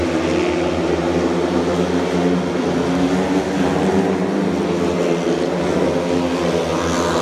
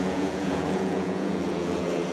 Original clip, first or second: first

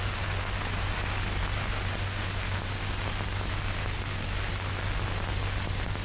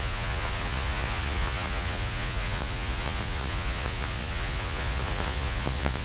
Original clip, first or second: first